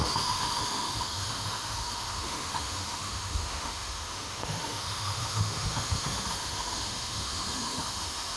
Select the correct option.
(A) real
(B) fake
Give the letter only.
B